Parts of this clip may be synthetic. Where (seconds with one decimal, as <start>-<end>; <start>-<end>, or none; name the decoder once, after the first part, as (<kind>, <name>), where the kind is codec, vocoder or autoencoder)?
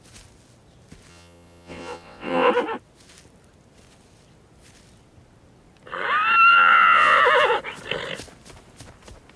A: 1.1-2.5 (vocoder, WaveNeXt); 6.5-7.2